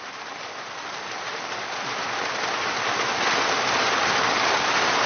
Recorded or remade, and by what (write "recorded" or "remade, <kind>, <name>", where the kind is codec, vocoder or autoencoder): recorded